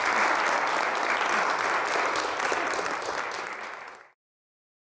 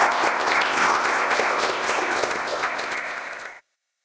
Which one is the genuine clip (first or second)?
first